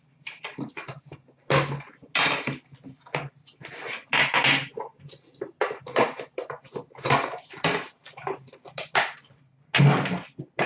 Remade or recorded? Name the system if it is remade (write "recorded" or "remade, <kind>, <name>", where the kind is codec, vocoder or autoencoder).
recorded